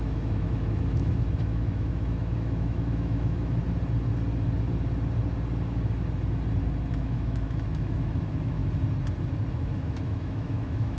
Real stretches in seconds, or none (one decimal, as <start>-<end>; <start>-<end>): 3.6-6.9; 8.6-9.5